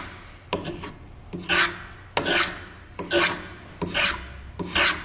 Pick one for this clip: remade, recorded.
recorded